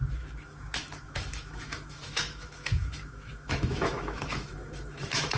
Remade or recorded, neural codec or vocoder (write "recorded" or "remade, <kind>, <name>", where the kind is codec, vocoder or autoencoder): remade, autoencoder, DAC-VAE